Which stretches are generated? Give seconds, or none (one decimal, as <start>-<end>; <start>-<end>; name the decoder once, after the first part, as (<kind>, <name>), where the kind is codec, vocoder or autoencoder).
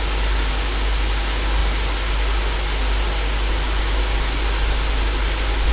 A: none